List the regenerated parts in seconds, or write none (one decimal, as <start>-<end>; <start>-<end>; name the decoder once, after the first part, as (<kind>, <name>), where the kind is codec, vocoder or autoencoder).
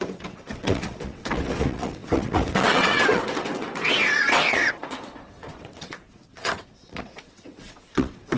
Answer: 0.0-8.4 (vocoder, WaveNeXt)